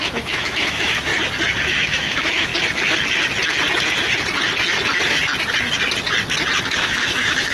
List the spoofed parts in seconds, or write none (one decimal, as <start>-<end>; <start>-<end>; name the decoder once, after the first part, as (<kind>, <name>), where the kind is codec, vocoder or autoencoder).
0.0-1.1 (autoencoder, DAC-VAE); 1.7-2.5; 6.6-7.5